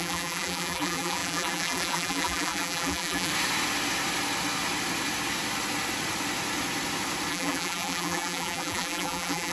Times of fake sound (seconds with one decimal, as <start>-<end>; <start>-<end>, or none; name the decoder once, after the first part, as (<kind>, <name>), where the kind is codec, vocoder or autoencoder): 0.0-3.3 (vocoder, BigVGAN v2); 7.3-9.5